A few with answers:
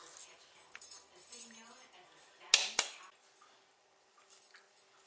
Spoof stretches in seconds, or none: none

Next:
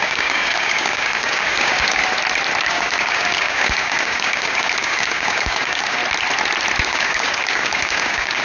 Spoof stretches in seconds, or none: 0.0-2.0 (codec, DAC); 2.6-6.0; 6.8-8.4

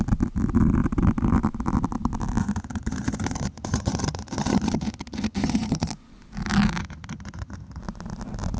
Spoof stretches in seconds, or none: 2.4-5.9 (vocoder, HiFi-GAN); 6.8-7.8

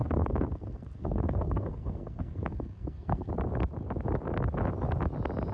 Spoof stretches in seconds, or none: 0.0-3.3 (codec, SNAC)

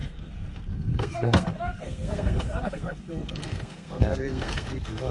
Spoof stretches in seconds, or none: 0.0-5.1 (codec, SNAC)

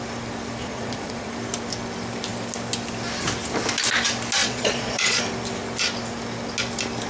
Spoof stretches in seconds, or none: 0.6-1.3 (vocoder, Vocos); 4.4-5.2

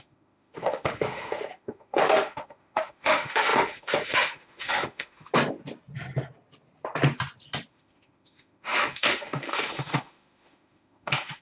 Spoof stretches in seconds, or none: 0.0-5.3 (autoencoder, DAC-VAE); 7.7-11.4

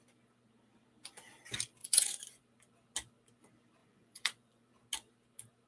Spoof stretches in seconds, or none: 1.8-2.4 (vocoder, Vocos); 3.8-4.7